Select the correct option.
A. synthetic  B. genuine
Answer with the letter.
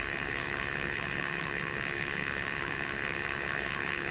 A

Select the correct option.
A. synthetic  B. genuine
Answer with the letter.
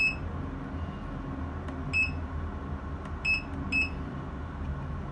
B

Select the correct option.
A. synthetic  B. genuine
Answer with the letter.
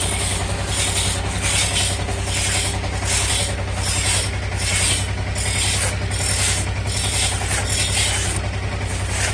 B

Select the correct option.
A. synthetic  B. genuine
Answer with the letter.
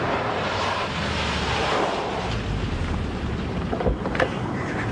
A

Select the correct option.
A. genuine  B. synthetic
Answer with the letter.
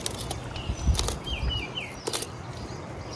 A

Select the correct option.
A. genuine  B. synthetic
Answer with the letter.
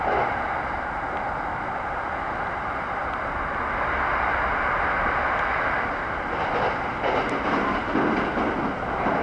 A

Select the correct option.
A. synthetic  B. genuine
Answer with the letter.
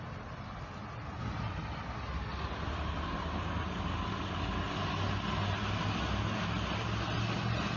B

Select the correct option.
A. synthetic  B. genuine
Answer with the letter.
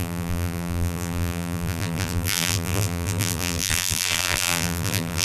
A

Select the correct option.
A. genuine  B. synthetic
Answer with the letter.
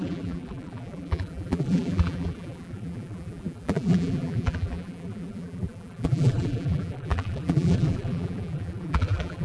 B